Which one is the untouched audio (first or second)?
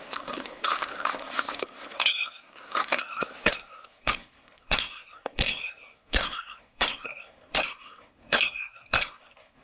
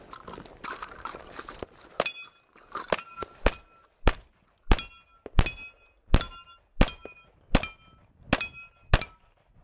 second